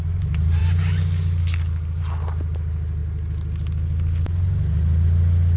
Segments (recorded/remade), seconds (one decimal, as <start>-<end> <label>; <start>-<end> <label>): 0.0-5.6 recorded